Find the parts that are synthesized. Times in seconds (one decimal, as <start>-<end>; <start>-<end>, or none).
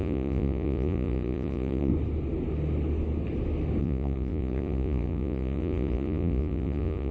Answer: 0.0-1.9; 3.8-7.1